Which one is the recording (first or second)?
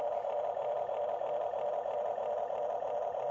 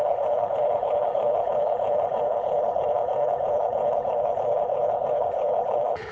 first